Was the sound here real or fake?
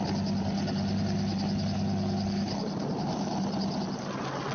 real